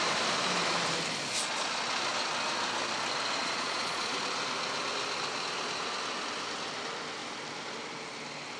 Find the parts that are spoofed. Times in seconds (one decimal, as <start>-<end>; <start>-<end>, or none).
3.4-4.2